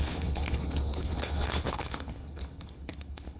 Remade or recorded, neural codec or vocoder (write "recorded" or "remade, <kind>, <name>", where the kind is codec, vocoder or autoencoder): remade, codec, HILCodec